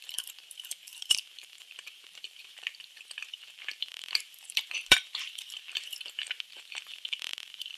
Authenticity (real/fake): fake